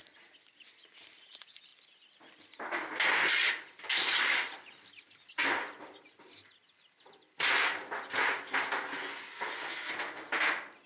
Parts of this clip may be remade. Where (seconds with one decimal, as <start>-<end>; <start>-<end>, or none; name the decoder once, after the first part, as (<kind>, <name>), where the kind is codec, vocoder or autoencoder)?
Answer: none